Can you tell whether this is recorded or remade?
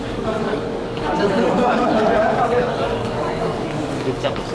remade